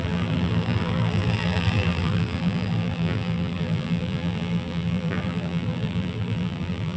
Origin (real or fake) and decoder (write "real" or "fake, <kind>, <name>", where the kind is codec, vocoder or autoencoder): fake, vocoder, BigVGAN v2